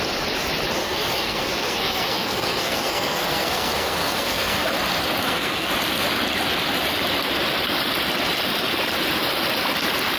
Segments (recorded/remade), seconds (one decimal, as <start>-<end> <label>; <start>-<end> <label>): 0.0-0.8 recorded; 0.8-4.7 remade; 4.7-5.2 recorded; 5.2-5.7 remade; 5.7-10.2 recorded